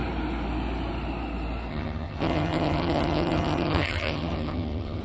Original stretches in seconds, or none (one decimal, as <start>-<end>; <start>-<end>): 0.0-1.7